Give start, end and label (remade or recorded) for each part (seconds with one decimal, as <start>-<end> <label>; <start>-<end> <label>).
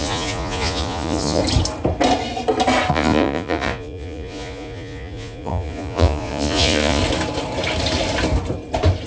0.0-1.4 remade; 1.4-2.9 recorded; 2.9-7.0 remade; 7.0-9.1 recorded